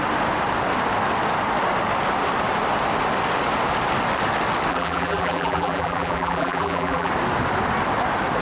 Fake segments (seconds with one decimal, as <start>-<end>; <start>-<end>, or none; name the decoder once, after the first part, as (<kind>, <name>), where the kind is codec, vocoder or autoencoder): 4.7-7.1 (vocoder, BigVGAN v2)